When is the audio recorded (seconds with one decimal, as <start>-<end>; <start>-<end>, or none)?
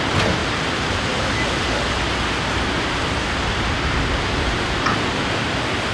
0.0-5.9